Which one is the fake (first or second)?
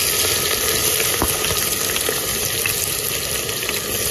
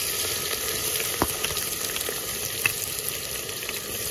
second